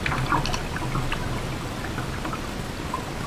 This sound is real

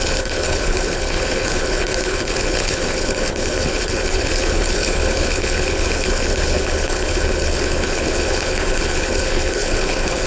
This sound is fake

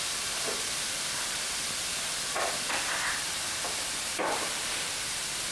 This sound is fake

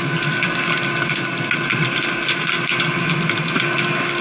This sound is real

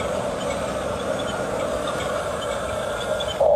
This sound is real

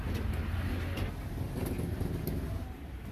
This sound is real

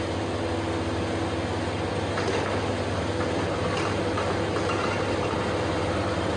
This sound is real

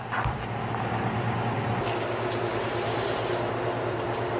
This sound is real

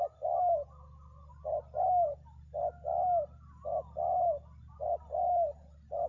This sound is real